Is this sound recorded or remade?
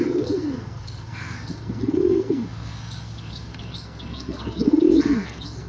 remade